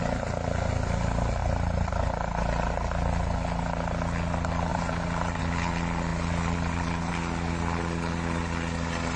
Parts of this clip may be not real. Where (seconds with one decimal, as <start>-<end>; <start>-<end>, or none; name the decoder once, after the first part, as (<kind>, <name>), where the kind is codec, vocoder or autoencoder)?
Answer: 1.4-1.9 (vocoder, BigVGAN v2); 4.7-5.4; 6.1-7.1